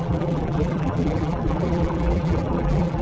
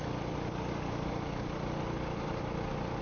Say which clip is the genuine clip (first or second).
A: second